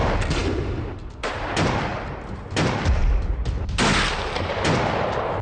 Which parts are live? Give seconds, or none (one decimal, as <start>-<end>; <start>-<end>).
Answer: 0.0-5.4